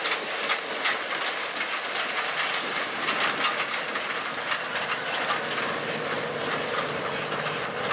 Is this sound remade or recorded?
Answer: recorded